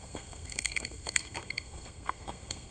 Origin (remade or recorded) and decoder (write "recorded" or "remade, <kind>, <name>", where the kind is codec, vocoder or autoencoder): remade, codec, SNAC